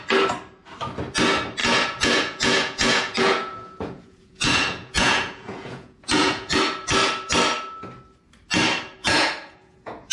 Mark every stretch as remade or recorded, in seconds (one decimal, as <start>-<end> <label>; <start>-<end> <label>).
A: 0.0-1.6 recorded; 1.6-6.6 remade; 6.6-9.0 recorded; 9.0-10.1 remade